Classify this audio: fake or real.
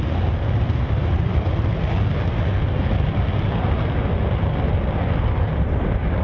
real